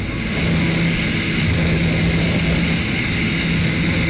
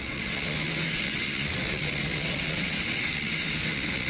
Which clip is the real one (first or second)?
first